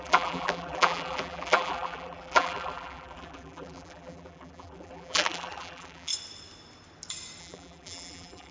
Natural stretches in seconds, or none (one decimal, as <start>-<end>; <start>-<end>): 6.1-7.4